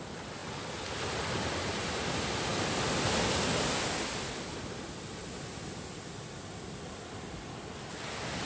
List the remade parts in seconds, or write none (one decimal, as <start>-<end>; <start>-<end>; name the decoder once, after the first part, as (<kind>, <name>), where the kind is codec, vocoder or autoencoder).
none